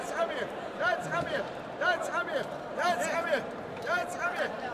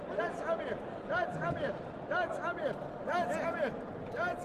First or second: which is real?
second